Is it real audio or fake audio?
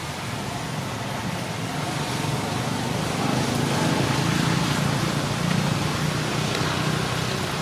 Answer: real